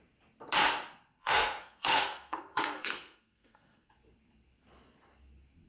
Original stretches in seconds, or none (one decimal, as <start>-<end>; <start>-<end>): 0.0-1.2; 3.9-5.7